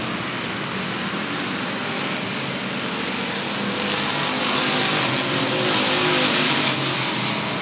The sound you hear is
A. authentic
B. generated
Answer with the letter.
A